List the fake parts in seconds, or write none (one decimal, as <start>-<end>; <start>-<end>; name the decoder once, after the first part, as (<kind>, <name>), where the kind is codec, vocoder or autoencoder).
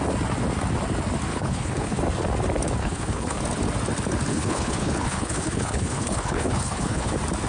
1.3-2.0 (codec, HILCodec); 2.8-3.4; 4.3-7.1